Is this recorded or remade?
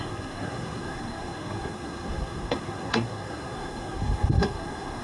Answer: remade